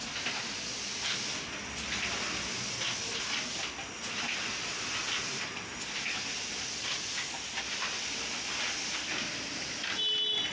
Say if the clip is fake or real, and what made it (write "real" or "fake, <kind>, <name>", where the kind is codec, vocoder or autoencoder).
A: real